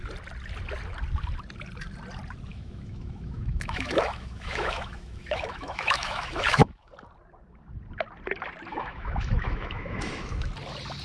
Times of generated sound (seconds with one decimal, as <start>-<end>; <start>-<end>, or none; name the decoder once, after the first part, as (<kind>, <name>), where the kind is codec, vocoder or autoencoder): 2.5-6.9 (autoencoder, DAC-VAE); 8.7-10.5